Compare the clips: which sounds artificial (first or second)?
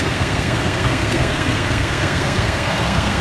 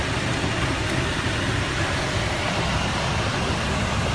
first